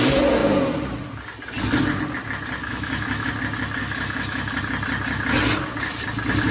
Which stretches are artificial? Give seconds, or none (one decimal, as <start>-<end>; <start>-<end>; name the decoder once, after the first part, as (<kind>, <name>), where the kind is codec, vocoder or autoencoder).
2.6-3.3 (autoencoder, DAC-VAE); 3.8-4.6